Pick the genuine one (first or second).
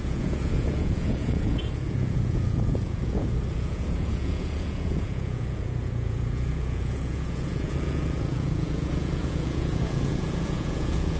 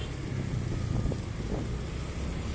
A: second